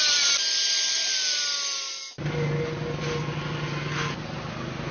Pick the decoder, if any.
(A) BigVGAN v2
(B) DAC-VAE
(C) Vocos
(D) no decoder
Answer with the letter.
D